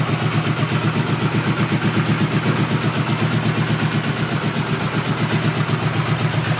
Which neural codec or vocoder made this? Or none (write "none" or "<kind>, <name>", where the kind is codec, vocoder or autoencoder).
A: none